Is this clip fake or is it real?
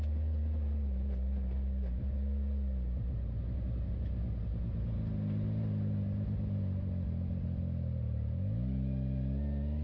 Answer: real